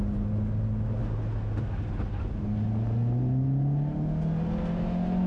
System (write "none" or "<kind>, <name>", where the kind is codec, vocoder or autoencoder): none